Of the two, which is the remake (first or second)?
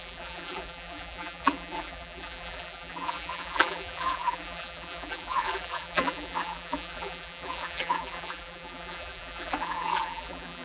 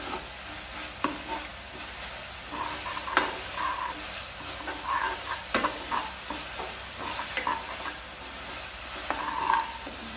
first